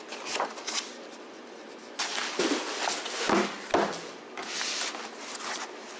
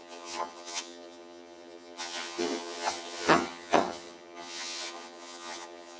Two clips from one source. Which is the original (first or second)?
first